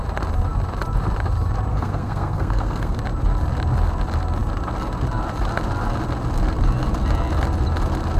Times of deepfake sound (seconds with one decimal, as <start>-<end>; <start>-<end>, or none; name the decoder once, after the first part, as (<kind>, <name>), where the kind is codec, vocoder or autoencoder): 1.7-3.0 (codec, SNAC)